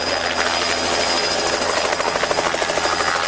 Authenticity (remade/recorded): recorded